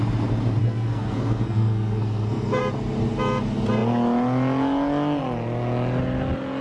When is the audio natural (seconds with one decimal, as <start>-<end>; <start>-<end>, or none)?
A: 0.0-0.6; 2.6-6.6